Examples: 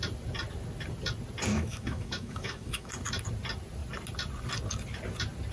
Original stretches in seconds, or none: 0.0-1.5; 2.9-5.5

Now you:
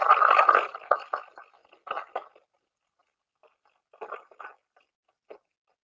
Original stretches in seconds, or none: 0.0-5.9

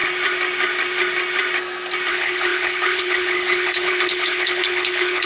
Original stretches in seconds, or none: 0.0-2.1